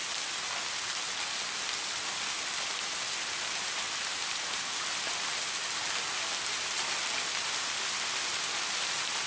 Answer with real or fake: real